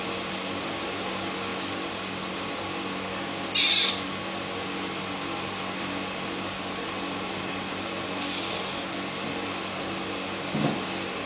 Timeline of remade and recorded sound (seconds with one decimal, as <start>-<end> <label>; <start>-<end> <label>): 0.0-11.3 recorded